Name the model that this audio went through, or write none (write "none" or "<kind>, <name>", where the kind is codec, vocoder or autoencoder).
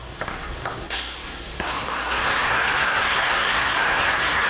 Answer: codec, SNAC